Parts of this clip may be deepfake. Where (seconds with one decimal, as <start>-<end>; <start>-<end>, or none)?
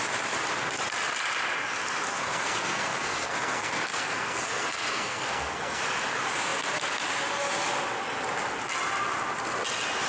2.1-5.8